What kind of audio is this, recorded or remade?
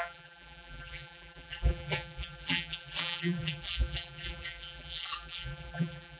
remade